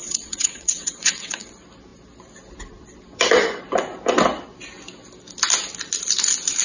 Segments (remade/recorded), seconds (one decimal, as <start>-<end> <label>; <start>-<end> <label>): 0.0-1.5 remade; 1.5-6.6 recorded